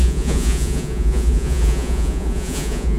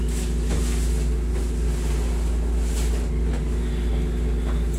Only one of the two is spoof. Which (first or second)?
first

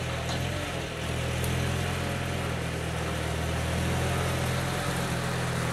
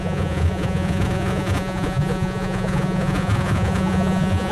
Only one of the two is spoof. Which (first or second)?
second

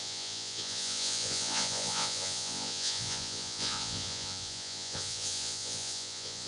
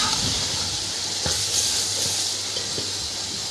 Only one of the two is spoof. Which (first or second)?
first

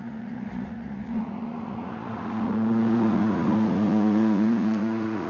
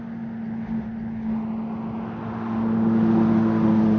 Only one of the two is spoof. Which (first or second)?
first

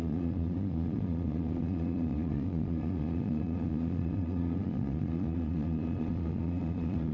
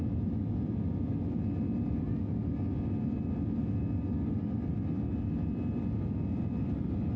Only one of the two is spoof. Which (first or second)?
first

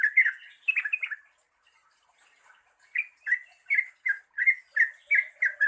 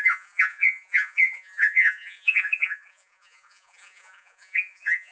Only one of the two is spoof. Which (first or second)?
second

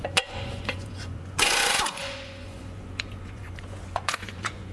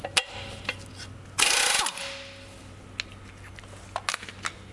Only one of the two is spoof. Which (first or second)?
first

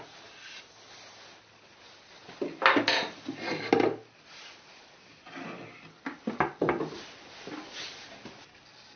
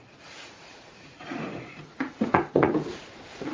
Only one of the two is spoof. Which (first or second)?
second